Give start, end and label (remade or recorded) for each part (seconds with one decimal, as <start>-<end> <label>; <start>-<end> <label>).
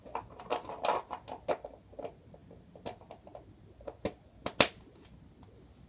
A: 0.0-5.9 recorded